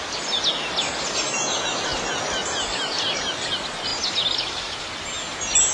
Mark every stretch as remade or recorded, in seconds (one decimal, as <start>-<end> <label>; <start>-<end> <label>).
0.0-5.7 recorded

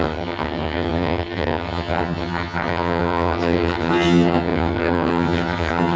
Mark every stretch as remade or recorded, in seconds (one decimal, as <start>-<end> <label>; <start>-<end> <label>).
0.0-6.0 remade

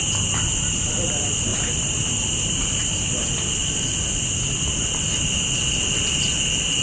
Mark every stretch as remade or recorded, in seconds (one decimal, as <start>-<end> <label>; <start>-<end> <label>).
0.0-1.5 recorded; 1.5-3.1 remade; 3.1-6.8 recorded

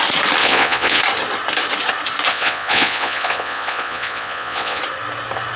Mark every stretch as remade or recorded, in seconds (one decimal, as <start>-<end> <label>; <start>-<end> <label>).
0.0-0.4 recorded; 0.4-1.0 remade; 1.0-2.3 recorded; 2.3-4.8 remade; 4.8-5.6 recorded

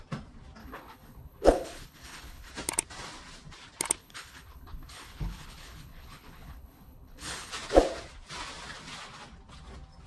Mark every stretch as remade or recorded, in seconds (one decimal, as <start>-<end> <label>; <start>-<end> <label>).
0.0-0.6 recorded; 0.6-2.5 remade; 2.5-4.0 recorded; 4.0-7.5 remade; 7.5-10.1 recorded